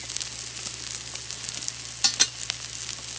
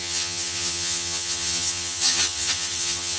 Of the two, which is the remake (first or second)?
second